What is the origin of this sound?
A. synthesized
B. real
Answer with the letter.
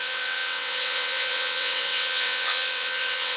A